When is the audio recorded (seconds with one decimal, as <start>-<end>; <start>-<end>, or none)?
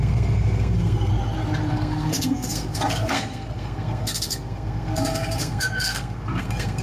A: 1.1-1.7